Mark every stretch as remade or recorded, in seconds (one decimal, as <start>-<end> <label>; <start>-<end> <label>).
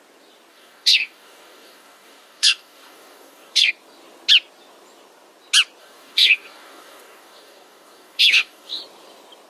0.0-0.5 recorded; 0.5-3.7 remade; 3.7-5.8 recorded; 5.8-8.8 remade; 8.8-9.5 recorded